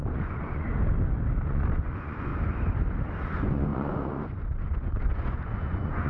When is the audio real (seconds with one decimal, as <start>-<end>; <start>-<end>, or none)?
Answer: 0.7-1.4; 2.3-3.2